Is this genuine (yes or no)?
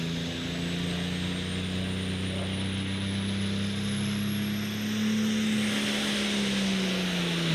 yes